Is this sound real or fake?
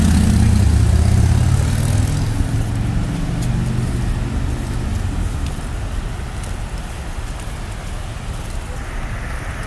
real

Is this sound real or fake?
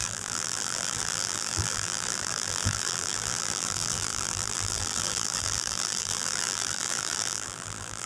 fake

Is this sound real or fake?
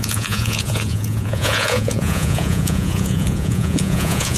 fake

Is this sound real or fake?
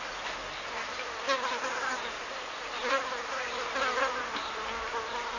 real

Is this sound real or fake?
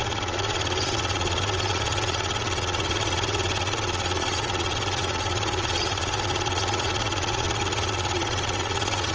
fake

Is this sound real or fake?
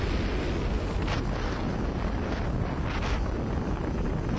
real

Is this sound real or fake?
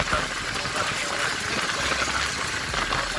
real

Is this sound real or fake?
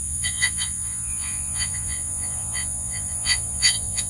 fake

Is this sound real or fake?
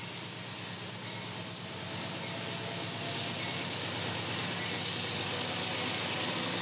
real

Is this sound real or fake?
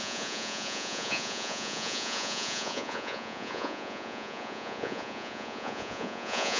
fake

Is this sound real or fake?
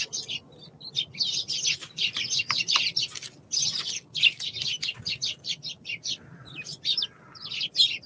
real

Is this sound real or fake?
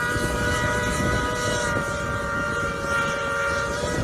real